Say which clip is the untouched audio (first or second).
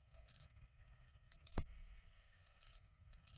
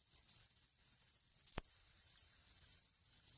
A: second